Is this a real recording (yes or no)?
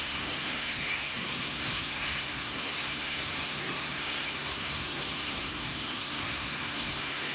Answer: no